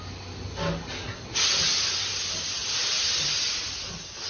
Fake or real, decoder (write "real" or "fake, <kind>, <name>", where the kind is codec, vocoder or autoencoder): real